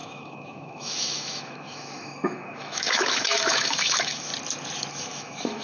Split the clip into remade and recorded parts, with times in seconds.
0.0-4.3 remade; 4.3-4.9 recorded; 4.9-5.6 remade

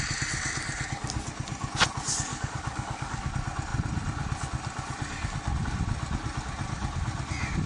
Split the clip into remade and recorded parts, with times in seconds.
0.0-2.3 recorded; 2.3-3.3 remade; 3.3-7.7 recorded

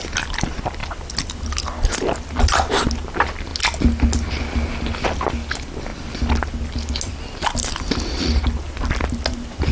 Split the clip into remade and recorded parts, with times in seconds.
0.0-9.7 recorded

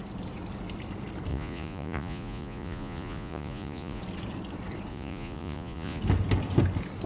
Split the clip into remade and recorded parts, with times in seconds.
0.0-1.3 recorded; 1.3-4.0 remade; 4.0-4.9 recorded; 4.9-6.0 remade; 6.0-7.1 recorded

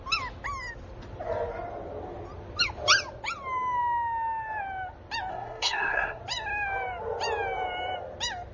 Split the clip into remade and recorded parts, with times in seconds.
0.0-5.3 recorded; 5.3-6.2 remade; 6.2-8.5 recorded

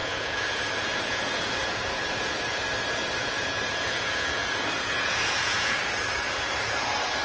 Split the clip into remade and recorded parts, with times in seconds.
0.0-2.6 remade; 2.6-3.2 recorded; 3.2-5.8 remade; 5.8-7.2 recorded

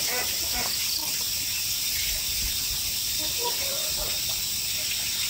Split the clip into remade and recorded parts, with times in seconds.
0.0-1.0 remade; 1.0-4.2 recorded; 4.2-5.3 remade